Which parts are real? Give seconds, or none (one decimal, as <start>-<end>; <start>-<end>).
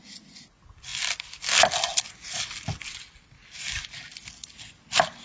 0.0-5.2